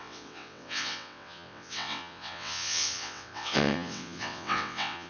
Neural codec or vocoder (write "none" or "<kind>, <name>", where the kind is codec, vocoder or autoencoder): vocoder, WaveNeXt